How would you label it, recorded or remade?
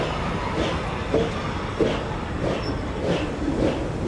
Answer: recorded